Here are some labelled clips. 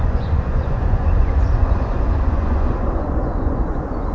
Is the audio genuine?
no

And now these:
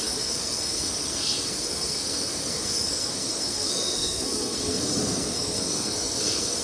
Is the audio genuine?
no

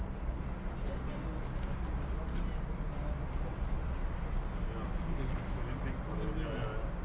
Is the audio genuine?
yes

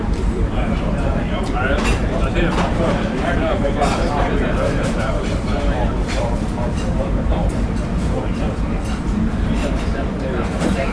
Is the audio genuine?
no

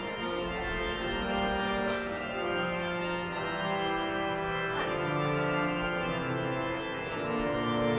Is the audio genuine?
yes